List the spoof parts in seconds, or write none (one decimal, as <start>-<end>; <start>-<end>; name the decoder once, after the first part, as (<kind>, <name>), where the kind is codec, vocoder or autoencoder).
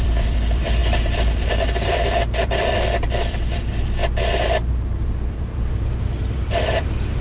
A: 0.0-4.0 (vocoder, BigVGAN v2); 4.7-7.2